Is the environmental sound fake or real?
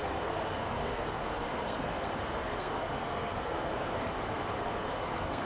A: fake